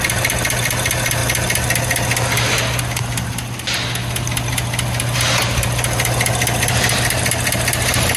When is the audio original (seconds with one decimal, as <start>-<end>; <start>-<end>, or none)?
0.0-8.2